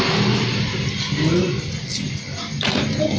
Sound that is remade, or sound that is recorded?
recorded